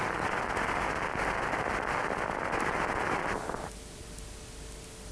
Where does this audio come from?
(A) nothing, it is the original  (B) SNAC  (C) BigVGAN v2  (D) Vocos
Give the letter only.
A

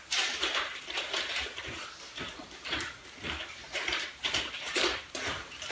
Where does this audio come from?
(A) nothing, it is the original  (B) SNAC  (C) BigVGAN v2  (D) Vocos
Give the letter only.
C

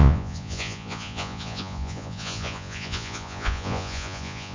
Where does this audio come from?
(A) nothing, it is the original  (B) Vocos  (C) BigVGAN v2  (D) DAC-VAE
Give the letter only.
B